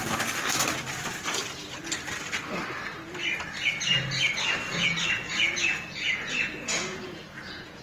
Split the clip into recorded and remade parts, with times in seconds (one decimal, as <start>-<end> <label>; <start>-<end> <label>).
0.0-4.7 recorded; 4.7-7.8 remade